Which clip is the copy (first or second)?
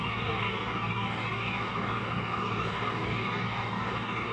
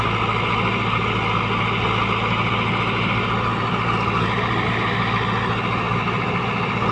first